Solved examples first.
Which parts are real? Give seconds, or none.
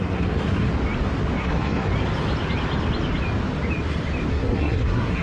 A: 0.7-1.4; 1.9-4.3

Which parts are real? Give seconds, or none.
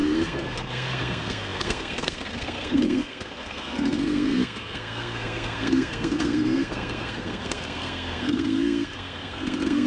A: none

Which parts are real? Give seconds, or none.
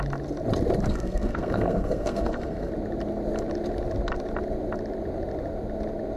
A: 0.0-0.9; 2.7-6.2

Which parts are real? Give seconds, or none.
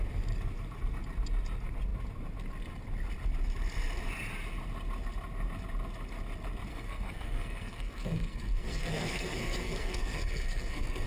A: 0.0-6.7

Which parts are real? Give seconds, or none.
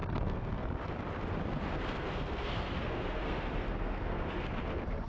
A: 0.7-1.5; 4.6-5.1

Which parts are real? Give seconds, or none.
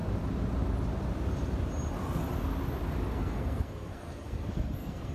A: 0.0-3.1